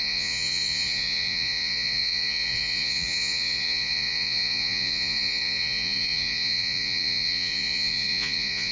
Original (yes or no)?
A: no